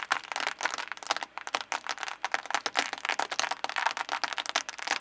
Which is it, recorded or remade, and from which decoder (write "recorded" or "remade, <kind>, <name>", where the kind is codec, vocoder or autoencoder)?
recorded